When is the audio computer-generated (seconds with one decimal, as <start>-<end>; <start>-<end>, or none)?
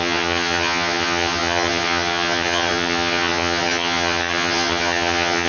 0.0-5.5